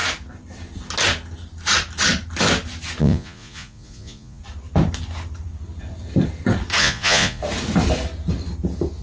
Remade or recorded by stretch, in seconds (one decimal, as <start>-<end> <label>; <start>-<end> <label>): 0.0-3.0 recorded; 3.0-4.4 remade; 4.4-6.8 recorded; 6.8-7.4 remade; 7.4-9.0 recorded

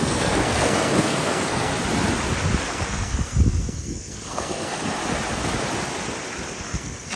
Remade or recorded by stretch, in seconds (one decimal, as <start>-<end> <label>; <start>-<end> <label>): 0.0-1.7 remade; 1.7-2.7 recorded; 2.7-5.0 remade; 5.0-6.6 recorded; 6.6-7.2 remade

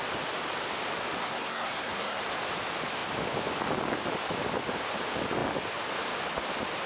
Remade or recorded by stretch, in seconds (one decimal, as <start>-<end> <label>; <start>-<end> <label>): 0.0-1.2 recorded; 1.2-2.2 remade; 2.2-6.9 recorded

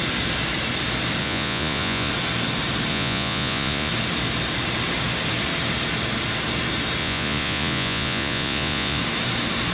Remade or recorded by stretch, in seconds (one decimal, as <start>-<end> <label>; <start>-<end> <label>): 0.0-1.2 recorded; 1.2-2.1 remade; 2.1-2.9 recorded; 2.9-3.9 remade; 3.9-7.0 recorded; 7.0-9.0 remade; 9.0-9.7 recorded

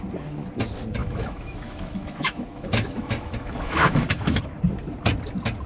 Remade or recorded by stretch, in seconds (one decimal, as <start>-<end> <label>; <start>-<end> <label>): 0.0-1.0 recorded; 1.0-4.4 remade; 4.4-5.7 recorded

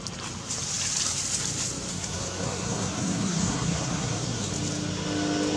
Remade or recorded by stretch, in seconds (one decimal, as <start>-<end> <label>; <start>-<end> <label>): 0.0-1.9 recorded; 1.9-4.5 remade; 4.5-5.6 recorded

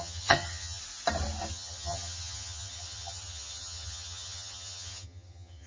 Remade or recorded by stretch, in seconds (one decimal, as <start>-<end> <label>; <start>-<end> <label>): 0.0-0.8 remade; 0.8-1.5 recorded; 1.5-5.7 remade